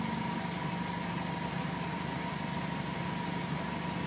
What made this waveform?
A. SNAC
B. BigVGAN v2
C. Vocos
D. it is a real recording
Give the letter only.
D